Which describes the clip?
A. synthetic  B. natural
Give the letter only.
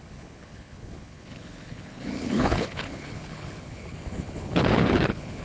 A